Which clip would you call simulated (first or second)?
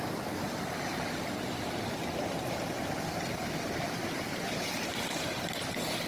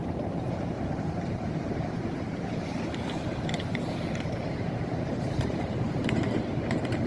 second